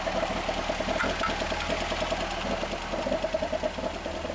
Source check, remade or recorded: recorded